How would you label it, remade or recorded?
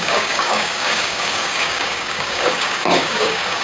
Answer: remade